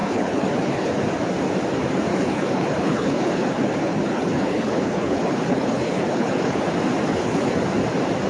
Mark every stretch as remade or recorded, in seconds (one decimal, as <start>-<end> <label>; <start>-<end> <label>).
0.0-0.9 remade; 0.9-2.1 recorded; 2.1-6.6 remade; 6.6-7.1 recorded; 7.1-7.6 remade; 7.6-8.3 recorded